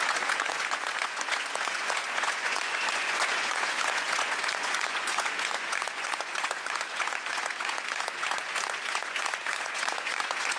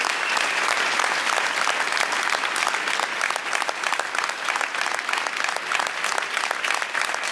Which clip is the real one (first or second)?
second